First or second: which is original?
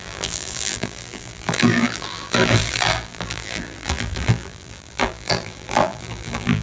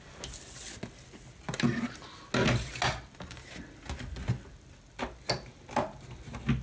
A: second